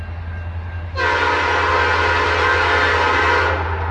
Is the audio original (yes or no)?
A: yes